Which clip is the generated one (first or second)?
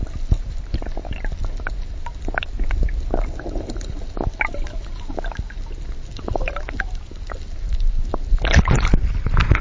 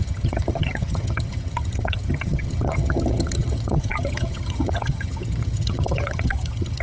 second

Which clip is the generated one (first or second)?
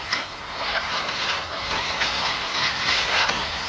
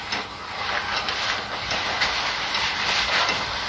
first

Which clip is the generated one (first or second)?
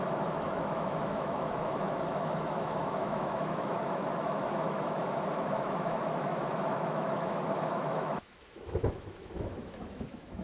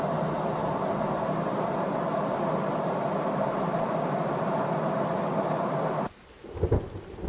first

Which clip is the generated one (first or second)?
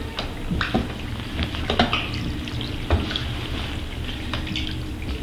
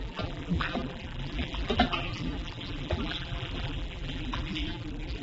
second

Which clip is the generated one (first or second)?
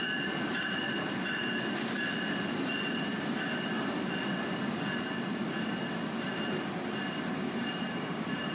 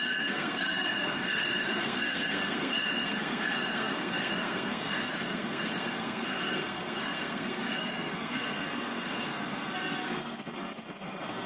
second